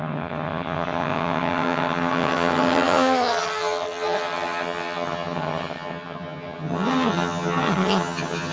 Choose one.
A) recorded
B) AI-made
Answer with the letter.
B